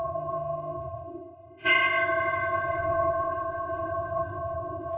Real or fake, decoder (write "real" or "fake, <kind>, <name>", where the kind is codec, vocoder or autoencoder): fake, codec, ZipCodec